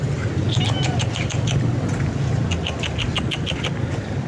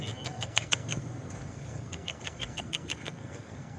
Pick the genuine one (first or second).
first